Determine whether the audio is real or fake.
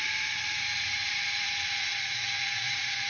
fake